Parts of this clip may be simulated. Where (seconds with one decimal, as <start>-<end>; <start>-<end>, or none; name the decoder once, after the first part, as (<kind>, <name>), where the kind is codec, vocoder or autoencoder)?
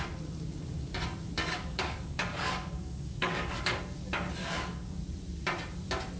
1.4-3.8 (codec, DAC); 4.4-5.0